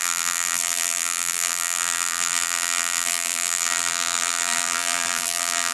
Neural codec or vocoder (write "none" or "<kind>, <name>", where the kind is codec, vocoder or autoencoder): vocoder, BigVGAN v2